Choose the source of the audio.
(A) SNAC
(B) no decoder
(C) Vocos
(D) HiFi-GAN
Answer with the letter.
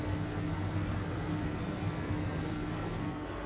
A